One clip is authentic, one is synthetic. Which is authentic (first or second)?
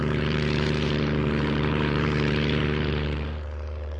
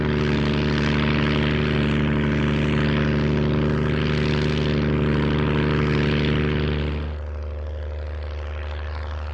second